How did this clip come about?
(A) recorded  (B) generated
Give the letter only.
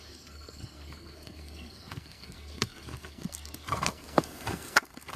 B